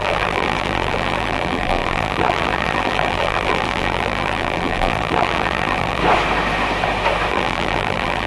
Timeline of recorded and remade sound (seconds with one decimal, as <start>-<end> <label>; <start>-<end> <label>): 0.0-6.0 remade; 6.0-7.3 recorded; 7.3-8.3 remade

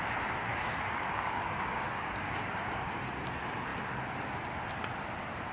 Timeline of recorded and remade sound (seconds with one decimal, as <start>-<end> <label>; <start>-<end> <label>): 0.0-0.5 recorded; 0.5-3.0 remade; 3.0-5.5 recorded

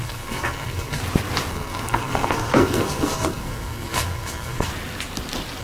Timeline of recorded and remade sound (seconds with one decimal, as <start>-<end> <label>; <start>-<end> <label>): 0.0-1.0 remade; 1.0-1.5 recorded; 1.5-4.7 remade; 4.7-5.6 recorded

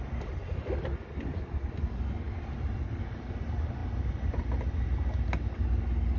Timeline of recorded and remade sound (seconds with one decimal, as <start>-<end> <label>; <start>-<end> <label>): 0.0-6.2 recorded

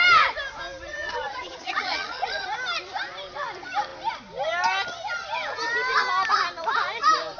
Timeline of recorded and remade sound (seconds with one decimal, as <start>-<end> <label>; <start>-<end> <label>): 0.0-0.9 recorded; 0.9-2.4 remade; 2.4-7.4 recorded

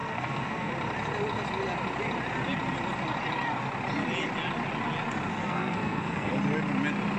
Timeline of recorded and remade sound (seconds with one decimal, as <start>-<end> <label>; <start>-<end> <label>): 0.0-0.7 remade; 0.7-5.3 recorded; 5.3-6.3 remade; 6.3-7.2 recorded

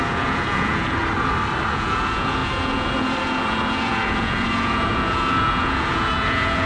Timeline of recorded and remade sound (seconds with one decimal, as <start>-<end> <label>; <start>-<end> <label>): 0.0-1.0 remade; 1.0-1.7 recorded; 1.7-6.7 remade